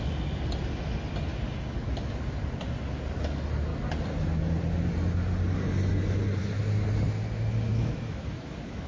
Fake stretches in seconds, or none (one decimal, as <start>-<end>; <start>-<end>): 7.7-8.9